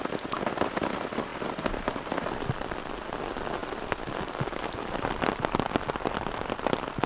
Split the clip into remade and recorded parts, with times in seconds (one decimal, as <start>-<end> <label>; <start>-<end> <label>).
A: 0.0-1.3 recorded; 1.3-2.5 remade; 2.5-7.1 recorded